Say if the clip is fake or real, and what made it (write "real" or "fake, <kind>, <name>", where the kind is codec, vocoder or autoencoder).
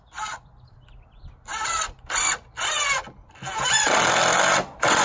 real